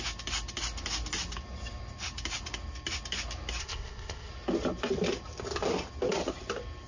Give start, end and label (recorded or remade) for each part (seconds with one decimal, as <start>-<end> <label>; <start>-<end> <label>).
0.0-3.6 recorded; 3.6-4.3 remade; 4.3-6.9 recorded